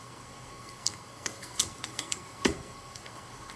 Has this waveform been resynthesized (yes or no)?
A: yes